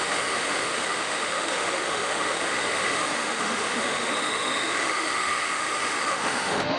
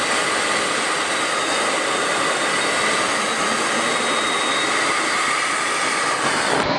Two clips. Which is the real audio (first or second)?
second